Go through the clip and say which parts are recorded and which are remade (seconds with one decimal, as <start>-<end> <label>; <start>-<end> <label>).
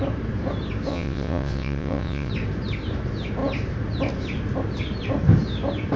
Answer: 0.0-0.9 recorded; 0.9-2.3 remade; 2.3-6.0 recorded